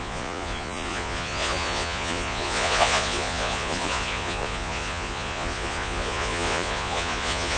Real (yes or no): no